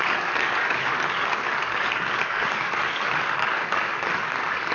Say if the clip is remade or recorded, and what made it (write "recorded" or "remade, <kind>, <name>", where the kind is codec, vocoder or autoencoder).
remade, codec, DAC